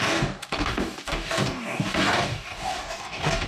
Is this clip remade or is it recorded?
remade